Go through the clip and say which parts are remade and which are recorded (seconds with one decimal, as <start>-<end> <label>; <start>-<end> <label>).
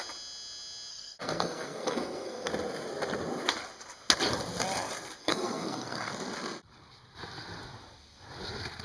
0.0-0.9 recorded; 0.9-2.5 remade; 2.5-5.2 recorded; 5.2-6.1 remade; 6.1-8.8 recorded